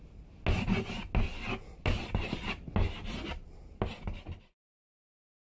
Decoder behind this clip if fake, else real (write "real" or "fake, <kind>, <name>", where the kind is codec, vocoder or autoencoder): real